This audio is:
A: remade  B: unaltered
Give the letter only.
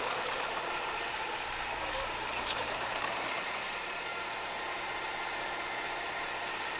A